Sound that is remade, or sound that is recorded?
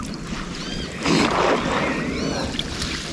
recorded